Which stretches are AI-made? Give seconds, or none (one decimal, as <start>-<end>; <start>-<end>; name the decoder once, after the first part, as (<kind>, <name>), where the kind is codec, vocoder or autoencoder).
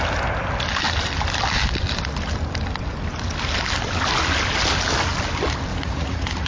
5.7-6.5 (vocoder, Vocos)